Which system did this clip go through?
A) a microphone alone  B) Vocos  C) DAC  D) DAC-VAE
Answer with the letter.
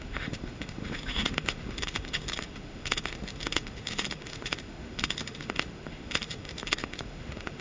D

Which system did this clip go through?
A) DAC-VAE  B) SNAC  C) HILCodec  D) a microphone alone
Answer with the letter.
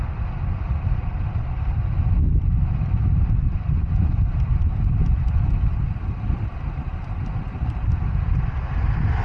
D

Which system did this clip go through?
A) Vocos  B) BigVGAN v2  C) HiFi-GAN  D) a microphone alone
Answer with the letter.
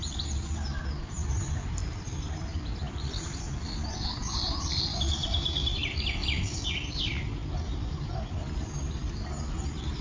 B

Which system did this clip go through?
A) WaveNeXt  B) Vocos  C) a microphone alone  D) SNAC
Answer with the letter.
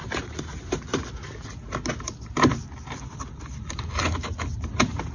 C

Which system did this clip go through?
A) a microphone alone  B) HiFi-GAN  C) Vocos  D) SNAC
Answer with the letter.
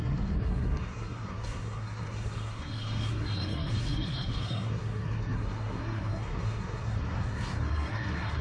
D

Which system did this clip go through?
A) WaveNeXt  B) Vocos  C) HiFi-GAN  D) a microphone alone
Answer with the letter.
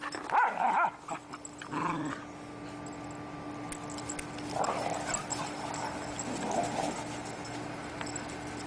D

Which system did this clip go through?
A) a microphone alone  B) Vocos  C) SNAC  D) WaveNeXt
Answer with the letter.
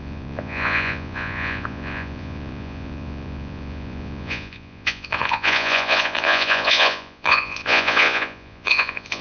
B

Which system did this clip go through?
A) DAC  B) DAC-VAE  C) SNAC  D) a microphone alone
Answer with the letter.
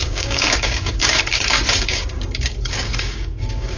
A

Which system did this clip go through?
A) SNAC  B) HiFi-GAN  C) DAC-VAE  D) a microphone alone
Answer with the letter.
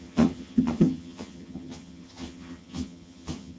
B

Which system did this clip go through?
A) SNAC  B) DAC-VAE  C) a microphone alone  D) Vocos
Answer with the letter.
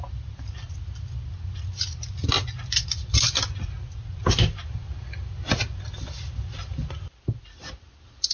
C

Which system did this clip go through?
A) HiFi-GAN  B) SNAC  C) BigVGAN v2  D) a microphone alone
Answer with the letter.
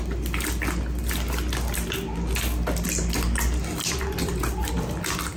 D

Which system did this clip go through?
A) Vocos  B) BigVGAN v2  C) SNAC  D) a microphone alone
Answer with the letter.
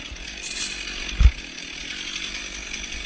D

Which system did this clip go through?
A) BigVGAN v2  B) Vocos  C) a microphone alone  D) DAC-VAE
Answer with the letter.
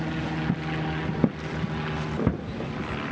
C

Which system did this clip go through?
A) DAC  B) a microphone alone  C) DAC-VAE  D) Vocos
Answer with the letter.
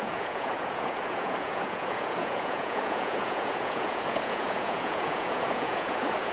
D